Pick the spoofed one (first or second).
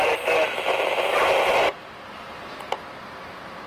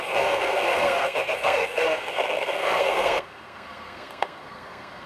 second